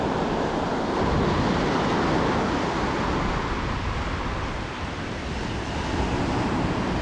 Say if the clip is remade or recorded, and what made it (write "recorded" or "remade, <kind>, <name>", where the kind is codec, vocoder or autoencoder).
recorded